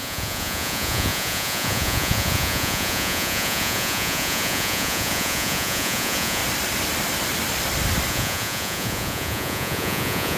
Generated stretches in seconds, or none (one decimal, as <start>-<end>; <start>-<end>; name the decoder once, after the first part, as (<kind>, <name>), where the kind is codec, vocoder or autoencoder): 0.0-6.4 (vocoder, Vocos); 8.1-10.4

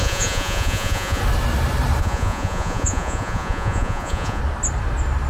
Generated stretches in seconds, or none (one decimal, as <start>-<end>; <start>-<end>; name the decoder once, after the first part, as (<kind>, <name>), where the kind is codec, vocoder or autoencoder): 0.0-1.2 (vocoder, Vocos); 2.0-4.4

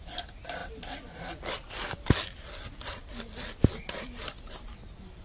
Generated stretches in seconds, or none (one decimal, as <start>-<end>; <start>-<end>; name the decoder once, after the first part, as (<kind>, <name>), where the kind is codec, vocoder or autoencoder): none

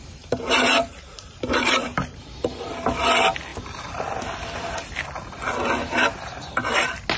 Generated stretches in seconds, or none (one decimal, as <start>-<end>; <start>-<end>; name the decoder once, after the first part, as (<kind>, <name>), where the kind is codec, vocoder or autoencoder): 0.0-2.7 (vocoder, BigVGAN v2); 3.5-4.0